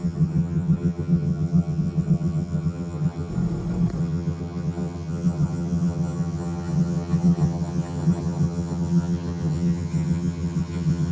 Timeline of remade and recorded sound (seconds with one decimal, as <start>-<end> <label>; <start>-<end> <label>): 0.0-3.3 remade; 3.3-4.0 recorded; 4.0-11.1 remade